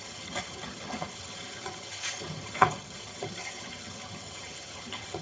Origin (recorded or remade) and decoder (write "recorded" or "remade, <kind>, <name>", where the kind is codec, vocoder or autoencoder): remade, vocoder, HiFi-GAN